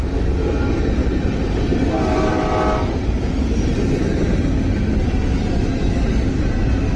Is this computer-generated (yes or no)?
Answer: no